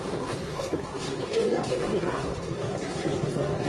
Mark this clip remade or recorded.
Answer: remade